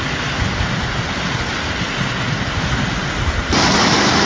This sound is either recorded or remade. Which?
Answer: recorded